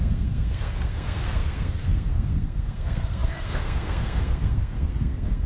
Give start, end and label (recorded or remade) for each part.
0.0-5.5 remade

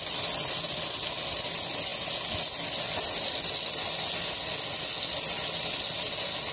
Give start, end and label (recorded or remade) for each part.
0.0-6.5 recorded

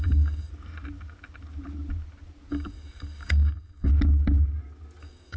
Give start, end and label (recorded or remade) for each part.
0.0-0.5 remade; 0.5-2.5 recorded; 2.5-3.9 remade; 3.9-5.0 recorded; 5.0-5.4 remade

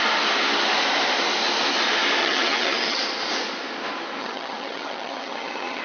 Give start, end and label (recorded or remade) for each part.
0.0-2.2 recorded; 2.2-3.0 remade; 3.0-4.2 recorded; 4.2-5.8 remade